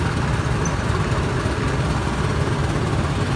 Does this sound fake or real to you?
real